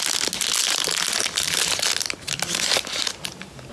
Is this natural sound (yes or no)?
yes